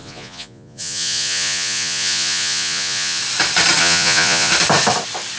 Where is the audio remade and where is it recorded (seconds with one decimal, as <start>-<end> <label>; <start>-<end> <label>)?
0.0-3.2 remade; 3.2-3.8 recorded; 3.8-4.5 remade; 4.5-5.4 recorded